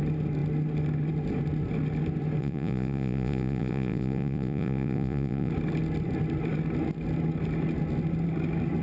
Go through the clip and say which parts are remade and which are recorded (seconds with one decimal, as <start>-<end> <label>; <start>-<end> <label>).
0.0-2.4 recorded; 2.4-5.5 remade; 5.5-8.8 recorded